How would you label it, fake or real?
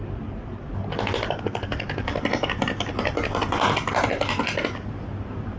real